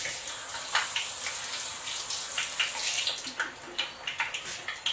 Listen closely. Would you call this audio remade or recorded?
recorded